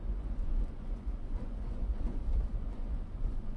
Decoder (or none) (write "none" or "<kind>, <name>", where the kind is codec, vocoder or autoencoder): vocoder, Vocos